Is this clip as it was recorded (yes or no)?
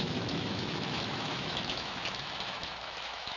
no